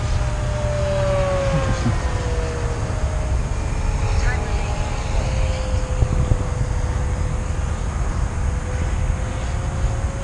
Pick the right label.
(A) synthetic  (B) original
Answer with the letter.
B